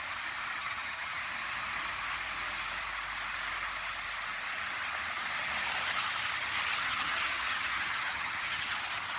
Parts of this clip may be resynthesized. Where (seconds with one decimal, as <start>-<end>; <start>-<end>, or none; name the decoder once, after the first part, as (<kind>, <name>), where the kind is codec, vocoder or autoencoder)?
0.6-1.2 (vocoder, HiFi-GAN); 6.8-8.7